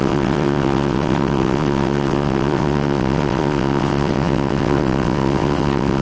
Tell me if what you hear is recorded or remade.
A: remade